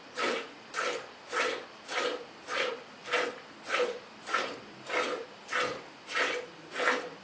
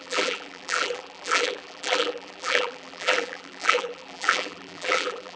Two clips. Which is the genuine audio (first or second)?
first